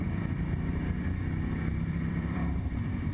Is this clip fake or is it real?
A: fake